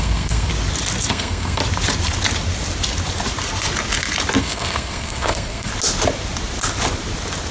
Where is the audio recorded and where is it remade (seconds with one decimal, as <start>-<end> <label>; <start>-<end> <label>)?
0.0-0.5 remade; 0.5-1.1 recorded; 1.1-1.6 remade; 1.6-4.4 recorded; 4.4-5.7 remade; 5.7-7.5 recorded